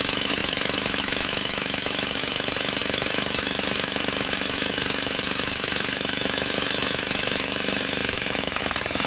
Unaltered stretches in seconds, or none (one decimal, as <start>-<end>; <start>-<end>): none